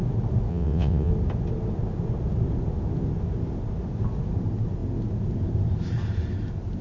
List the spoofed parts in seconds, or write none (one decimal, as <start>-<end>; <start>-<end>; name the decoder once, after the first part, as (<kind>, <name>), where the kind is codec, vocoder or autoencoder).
0.5-1.1 (vocoder, WaveNeXt)